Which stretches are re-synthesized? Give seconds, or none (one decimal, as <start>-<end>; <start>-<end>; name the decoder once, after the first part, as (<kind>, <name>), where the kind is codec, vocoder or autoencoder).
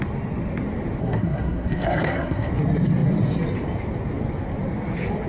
1.0-2.5 (codec, SNAC)